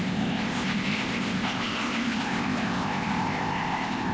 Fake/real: fake